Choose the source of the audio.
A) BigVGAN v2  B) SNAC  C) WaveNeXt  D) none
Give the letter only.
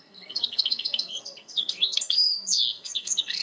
B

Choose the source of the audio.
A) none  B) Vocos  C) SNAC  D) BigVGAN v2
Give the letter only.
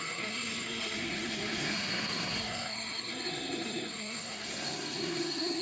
C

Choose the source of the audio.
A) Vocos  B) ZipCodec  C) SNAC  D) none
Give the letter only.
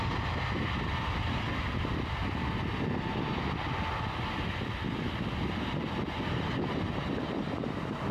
D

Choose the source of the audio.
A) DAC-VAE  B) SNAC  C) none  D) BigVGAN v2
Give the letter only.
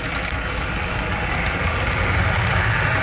C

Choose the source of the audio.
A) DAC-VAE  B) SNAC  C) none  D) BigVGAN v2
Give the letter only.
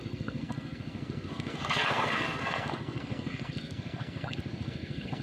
B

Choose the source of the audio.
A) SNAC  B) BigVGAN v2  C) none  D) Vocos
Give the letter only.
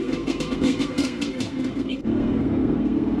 A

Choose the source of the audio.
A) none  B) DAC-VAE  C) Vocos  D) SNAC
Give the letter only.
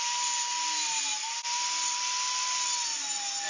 A